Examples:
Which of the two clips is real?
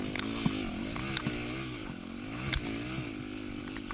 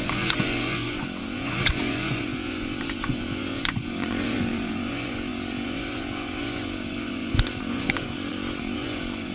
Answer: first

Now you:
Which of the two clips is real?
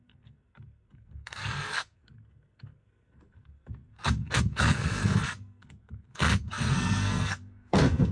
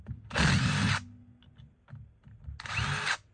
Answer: second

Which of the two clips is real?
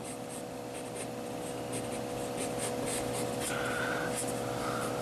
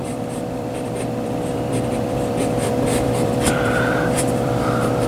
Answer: first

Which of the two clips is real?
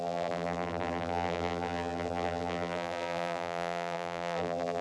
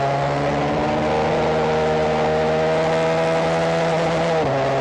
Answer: second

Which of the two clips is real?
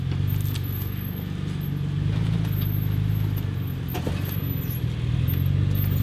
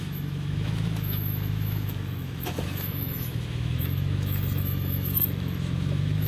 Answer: first